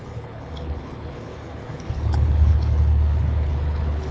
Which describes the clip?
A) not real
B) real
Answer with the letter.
A